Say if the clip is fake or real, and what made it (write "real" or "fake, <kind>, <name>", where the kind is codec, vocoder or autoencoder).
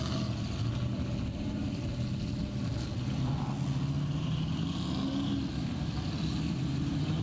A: real